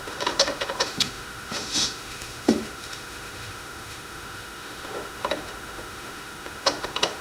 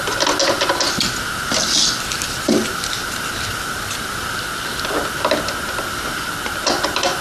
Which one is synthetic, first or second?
first